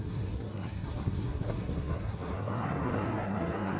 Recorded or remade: remade